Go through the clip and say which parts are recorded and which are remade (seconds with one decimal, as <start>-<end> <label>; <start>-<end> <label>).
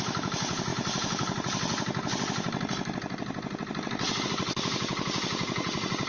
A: 0.0-6.1 recorded